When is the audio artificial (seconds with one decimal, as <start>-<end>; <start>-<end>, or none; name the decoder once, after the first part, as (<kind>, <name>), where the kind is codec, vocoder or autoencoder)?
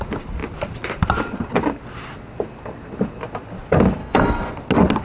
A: 4.0-4.5 (autoencoder, DAC-VAE)